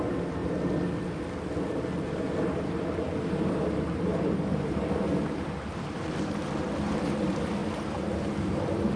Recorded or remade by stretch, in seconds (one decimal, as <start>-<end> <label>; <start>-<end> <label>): 0.0-4.1 recorded; 4.1-6.3 remade; 6.3-7.6 recorded; 7.6-8.6 remade; 8.6-9.0 recorded